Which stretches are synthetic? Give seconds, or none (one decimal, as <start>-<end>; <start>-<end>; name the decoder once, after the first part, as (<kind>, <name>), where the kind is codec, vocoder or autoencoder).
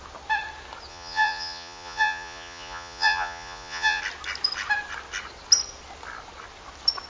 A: 0.9-4.0 (vocoder, Vocos)